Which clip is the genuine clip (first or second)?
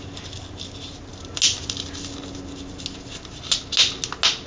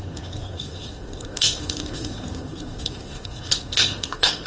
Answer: first